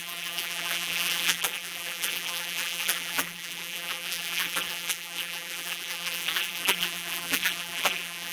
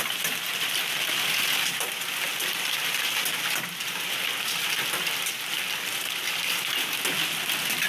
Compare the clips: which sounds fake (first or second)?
first